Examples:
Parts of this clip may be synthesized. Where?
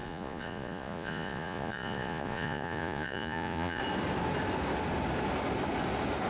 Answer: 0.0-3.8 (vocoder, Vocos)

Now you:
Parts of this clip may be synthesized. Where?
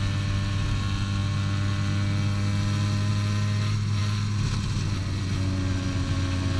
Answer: none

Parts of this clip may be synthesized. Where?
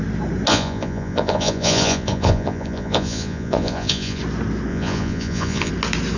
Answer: 0.5-4.2 (vocoder, Vocos); 4.7-5.7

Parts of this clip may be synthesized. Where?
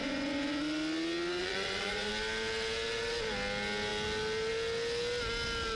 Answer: 0.0-0.6 (vocoder, Vocos); 1.4-2.1